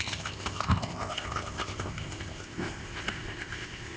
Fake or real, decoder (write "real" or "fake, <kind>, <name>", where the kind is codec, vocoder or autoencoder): fake, codec, ZipCodec